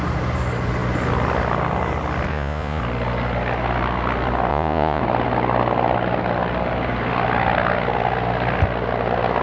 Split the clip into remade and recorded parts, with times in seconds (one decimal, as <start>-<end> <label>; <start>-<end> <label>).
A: 0.0-2.3 recorded; 2.3-2.8 remade; 2.8-4.5 recorded; 4.5-5.0 remade; 5.0-9.4 recorded